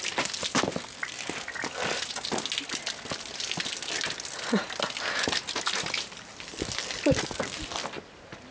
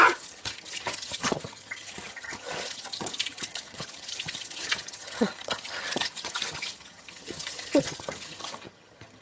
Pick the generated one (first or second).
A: second